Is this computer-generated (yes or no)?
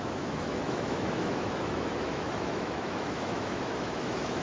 yes